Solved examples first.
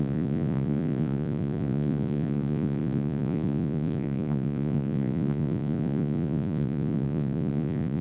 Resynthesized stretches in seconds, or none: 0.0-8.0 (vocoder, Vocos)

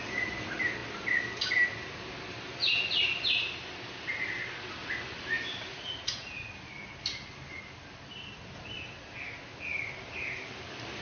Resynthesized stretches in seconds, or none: 5.7-6.5 (vocoder, Vocos)

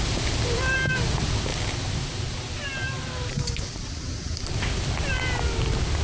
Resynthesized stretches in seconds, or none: none

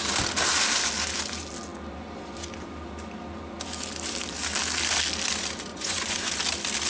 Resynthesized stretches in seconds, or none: 5.7-6.3 (vocoder, Vocos)

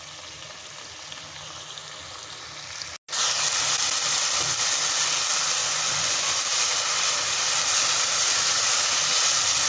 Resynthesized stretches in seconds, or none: 5.6-6.4 (vocoder, Vocos)

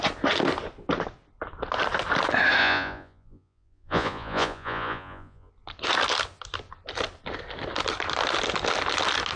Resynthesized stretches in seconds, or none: 2.6-5.5 (vocoder, Vocos)

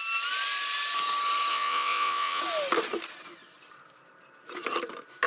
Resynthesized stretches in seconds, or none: 1.5-2.4 (vocoder, Vocos)